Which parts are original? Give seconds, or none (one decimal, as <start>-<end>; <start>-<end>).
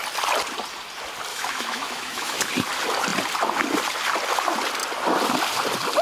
0.0-1.3; 2.4-6.0